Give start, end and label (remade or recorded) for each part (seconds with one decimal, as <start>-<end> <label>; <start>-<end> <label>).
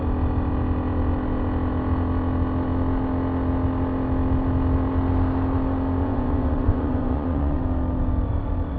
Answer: 0.0-6.0 recorded; 6.0-7.6 remade; 7.6-8.8 recorded